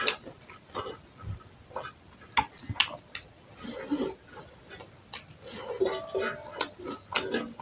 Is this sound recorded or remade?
recorded